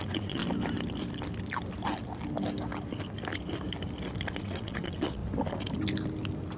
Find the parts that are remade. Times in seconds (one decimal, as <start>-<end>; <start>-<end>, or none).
0.0-0.4; 4.4-5.2